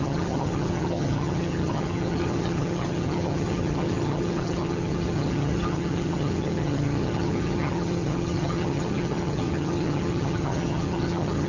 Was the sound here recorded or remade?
remade